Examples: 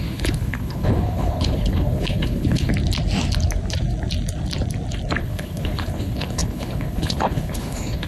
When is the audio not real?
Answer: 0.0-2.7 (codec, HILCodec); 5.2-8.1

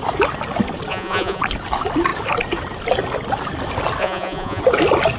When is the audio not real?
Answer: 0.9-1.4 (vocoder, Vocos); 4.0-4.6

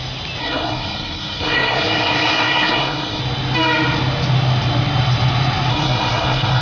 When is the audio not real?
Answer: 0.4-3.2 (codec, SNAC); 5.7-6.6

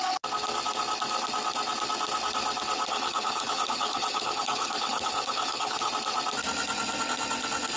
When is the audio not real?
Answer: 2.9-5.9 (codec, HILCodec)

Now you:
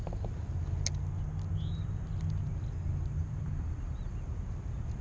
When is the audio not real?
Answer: 3.2-4.4 (vocoder, BigVGAN v2)